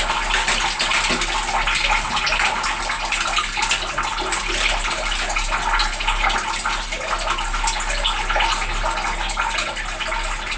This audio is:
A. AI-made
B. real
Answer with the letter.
B